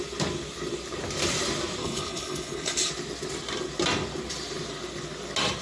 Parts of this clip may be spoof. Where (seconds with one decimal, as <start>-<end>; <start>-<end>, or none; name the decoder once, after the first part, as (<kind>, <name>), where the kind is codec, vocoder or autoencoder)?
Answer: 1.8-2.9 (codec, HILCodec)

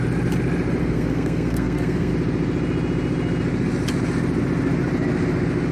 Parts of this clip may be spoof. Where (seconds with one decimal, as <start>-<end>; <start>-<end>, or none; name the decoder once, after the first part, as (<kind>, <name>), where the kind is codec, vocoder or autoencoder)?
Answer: 0.8-2.1 (codec, SNAC)

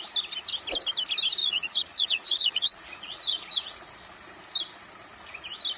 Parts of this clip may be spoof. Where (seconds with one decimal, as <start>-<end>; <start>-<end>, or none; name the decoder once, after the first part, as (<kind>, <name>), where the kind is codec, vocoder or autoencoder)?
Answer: 1.4-3.9 (vocoder, Vocos)

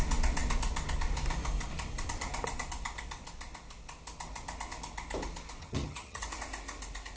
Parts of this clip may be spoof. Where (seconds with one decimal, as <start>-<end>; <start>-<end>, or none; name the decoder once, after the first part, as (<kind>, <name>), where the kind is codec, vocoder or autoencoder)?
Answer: 5.6-6.2 (vocoder, HiFi-GAN)

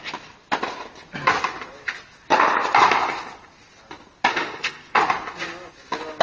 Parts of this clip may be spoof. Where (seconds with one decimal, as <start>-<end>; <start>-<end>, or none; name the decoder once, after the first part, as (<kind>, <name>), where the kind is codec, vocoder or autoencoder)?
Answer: 4.3-5.0 (autoencoder, DAC-VAE)

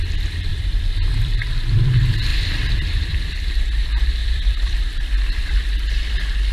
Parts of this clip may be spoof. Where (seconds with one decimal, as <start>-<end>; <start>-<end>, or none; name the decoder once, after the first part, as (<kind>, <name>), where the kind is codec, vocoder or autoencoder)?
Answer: 0.5-1.5 (vocoder, BigVGAN v2); 4.2-5.5

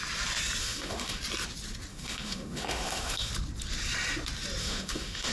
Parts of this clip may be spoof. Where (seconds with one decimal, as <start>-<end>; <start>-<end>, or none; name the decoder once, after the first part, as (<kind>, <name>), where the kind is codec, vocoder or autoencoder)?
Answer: 0.6-1.2 (autoencoder, DAC-VAE); 1.9-3.3; 4.6-5.3

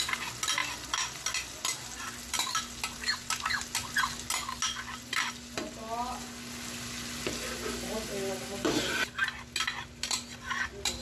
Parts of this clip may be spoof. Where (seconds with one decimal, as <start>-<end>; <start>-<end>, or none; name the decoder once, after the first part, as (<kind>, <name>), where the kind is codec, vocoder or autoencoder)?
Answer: none